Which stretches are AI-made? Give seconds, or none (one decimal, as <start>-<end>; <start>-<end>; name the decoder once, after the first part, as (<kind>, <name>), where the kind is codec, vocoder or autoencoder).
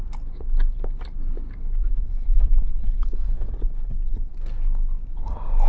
1.8-4.2 (vocoder, WaveNeXt)